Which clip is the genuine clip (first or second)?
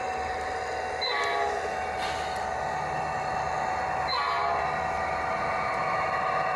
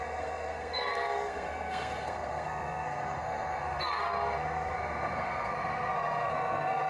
first